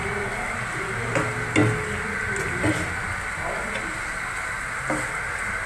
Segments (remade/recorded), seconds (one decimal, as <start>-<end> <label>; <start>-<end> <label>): 0.0-5.7 recorded

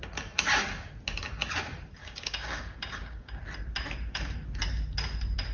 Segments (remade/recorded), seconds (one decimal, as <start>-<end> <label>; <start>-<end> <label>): 0.0-2.0 recorded; 2.0-3.4 remade; 3.4-5.5 recorded

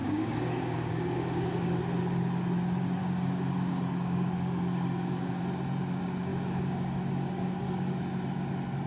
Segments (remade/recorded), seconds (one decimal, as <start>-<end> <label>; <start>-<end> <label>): 0.0-1.8 remade; 1.8-3.0 recorded; 3.0-5.4 remade; 5.4-6.3 recorded; 6.3-8.0 remade; 8.0-8.9 recorded

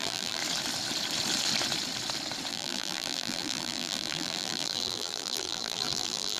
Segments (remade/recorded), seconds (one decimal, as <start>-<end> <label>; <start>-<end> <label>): 0.0-0.4 remade; 0.4-2.5 recorded; 2.5-6.4 remade

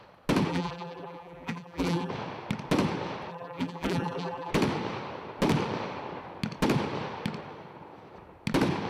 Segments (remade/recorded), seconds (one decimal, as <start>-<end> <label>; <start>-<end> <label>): 0.0-0.5 recorded; 0.5-2.1 remade; 2.1-3.3 recorded; 3.3-4.5 remade; 4.5-8.9 recorded

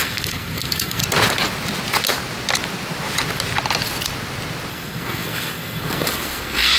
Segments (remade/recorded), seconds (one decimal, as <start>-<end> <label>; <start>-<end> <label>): 0.0-1.0 remade; 1.0-4.7 recorded; 4.7-6.8 remade

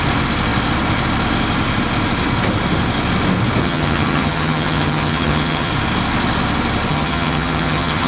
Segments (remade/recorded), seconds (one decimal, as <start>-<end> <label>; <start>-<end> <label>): 0.0-3.6 recorded; 3.6-5.7 remade; 5.7-6.9 recorded; 6.9-8.1 remade

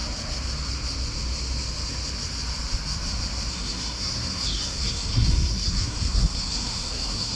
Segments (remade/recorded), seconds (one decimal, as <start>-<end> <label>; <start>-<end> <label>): 0.0-3.5 recorded; 3.5-7.4 remade